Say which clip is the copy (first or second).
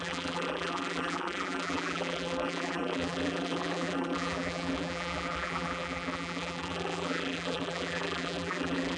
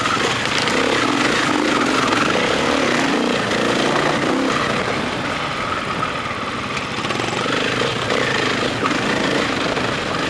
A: first